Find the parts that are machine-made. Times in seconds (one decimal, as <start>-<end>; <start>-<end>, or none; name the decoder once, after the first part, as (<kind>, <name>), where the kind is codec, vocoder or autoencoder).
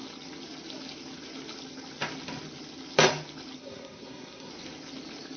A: 3.6-4.5 (codec, SNAC)